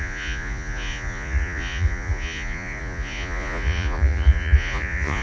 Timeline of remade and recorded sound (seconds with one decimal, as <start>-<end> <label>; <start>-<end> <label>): 0.0-5.2 remade